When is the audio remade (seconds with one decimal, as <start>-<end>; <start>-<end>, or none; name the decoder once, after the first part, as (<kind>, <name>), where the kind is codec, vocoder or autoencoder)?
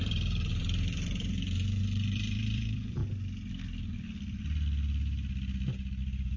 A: 0.0-3.0 (vocoder, BigVGAN v2); 6.0-6.4